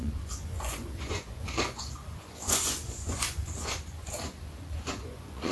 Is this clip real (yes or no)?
no